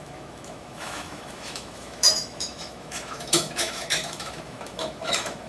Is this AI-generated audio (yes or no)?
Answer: yes